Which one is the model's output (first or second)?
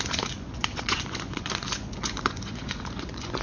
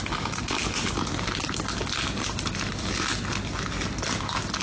first